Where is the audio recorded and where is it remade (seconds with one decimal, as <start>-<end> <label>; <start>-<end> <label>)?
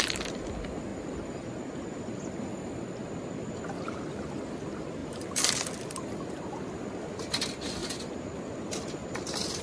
0.0-5.0 recorded; 5.0-6.3 remade; 6.3-7.8 recorded; 7.8-9.1 remade; 9.1-9.6 recorded